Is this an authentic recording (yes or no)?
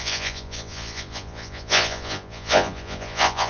no